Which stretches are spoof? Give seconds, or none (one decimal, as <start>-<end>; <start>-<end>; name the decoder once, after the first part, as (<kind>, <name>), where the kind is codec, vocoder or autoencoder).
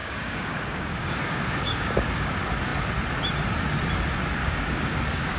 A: 0.0-2.3 (codec, DAC); 4.4-5.4